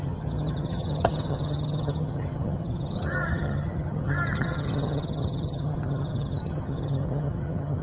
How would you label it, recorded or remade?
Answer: remade